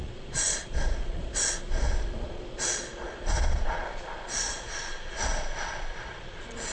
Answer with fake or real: fake